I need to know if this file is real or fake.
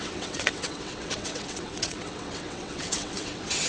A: fake